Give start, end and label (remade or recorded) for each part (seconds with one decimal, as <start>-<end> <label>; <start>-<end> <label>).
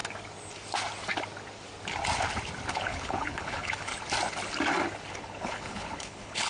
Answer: 0.0-2.7 recorded; 2.7-3.9 remade; 3.9-5.2 recorded; 5.2-6.5 remade